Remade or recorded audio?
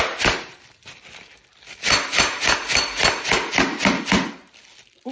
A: recorded